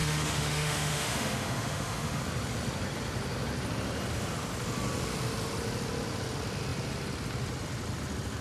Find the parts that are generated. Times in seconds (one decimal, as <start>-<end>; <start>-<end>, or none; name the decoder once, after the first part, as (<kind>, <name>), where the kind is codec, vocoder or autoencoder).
0.0-2.2 (autoencoder, DAC-VAE)